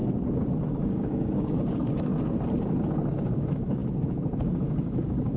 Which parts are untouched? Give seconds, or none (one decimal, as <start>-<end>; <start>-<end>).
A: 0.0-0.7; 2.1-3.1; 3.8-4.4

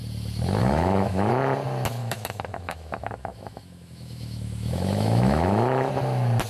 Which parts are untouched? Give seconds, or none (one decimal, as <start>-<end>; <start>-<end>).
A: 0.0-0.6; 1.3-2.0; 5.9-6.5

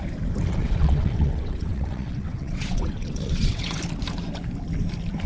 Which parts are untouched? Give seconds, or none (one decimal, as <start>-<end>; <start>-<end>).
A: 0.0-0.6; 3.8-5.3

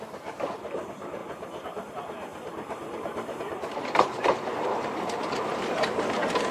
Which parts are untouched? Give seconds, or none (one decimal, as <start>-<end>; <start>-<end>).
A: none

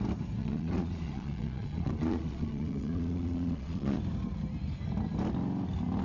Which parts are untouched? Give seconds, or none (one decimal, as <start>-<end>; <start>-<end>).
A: 0.0-0.4; 4.0-6.0

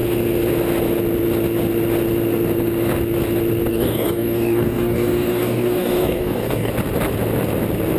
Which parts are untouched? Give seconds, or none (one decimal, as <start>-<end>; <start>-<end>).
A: 0.0-3.7; 6.7-8.0

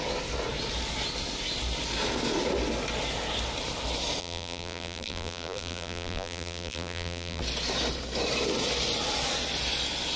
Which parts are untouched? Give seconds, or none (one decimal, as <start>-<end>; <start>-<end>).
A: 0.0-4.2; 7.4-10.2